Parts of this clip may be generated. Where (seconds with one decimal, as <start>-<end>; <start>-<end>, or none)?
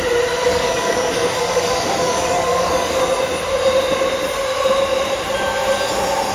0.5-3.0